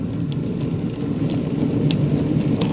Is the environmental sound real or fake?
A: real